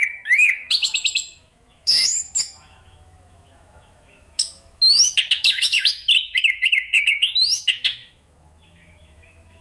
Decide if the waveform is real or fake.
fake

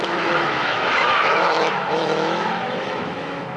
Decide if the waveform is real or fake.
fake